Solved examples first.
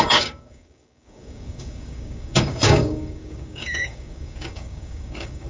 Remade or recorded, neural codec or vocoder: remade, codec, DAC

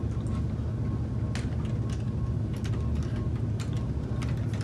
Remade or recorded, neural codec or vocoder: recorded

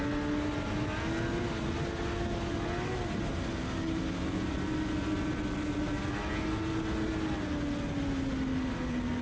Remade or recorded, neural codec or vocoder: recorded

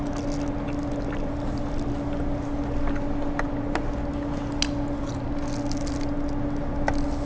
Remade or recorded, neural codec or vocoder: recorded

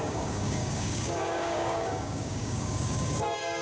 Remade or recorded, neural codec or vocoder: remade, codec, DAC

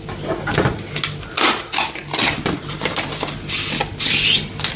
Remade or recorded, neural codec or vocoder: recorded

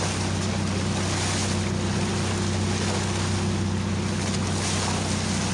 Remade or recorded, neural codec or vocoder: recorded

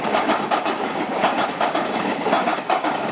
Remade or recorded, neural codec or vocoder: remade, codec, DAC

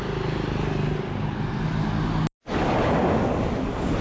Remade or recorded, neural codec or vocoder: recorded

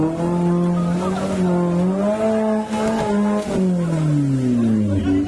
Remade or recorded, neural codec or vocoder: recorded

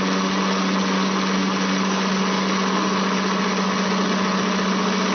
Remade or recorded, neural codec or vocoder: recorded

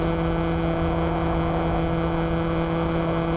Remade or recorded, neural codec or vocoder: recorded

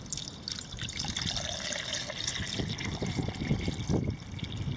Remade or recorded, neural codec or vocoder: recorded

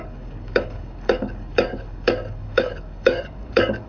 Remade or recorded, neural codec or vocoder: remade, codec, DAC